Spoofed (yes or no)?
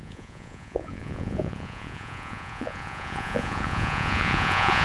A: yes